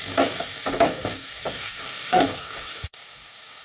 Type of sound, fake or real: fake